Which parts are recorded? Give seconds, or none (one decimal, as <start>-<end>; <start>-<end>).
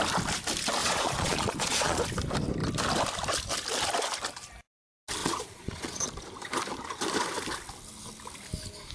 0.0-0.8; 2.0-5.2; 6.1-8.9